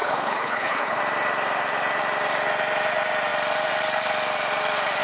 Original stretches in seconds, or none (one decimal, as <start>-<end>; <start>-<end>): 1.0-5.0